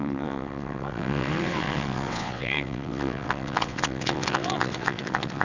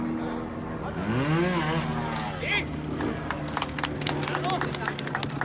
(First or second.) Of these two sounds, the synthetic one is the first